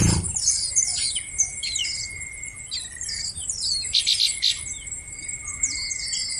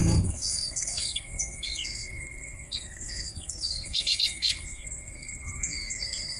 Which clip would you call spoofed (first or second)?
second